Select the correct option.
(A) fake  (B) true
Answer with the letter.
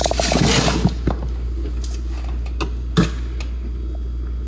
B